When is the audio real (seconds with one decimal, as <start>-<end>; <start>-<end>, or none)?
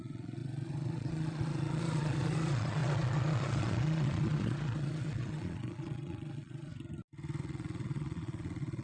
6.7-7.4